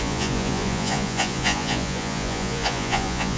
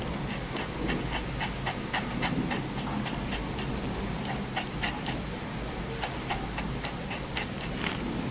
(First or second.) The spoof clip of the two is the first